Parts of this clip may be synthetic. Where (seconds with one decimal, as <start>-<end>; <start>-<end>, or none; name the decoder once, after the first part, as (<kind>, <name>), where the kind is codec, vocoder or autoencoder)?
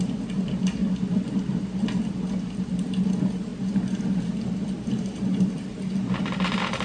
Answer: none